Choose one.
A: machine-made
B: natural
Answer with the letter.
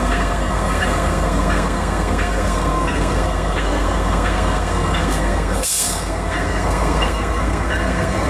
A